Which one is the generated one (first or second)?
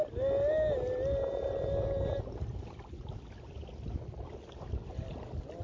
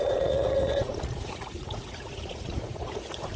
second